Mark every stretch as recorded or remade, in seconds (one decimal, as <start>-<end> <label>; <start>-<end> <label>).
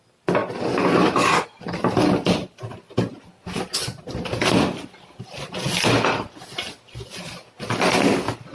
0.0-8.5 recorded